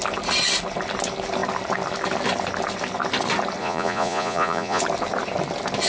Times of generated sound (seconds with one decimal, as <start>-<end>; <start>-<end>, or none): 3.6-4.8